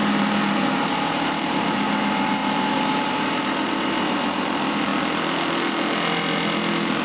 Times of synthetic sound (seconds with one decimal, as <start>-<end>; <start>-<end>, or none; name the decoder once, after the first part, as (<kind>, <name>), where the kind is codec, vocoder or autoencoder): 0.0-4.9 (vocoder, BigVGAN v2)